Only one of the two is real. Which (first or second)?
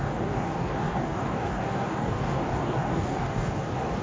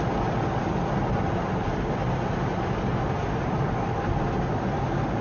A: second